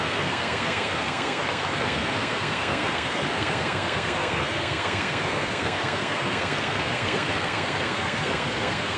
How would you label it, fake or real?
fake